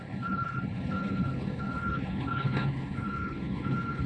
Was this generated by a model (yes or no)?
yes